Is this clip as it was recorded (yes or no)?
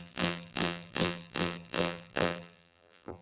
no